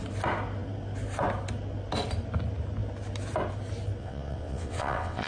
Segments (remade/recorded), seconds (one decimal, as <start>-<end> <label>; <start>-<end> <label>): 0.0-4.0 recorded; 4.0-5.3 remade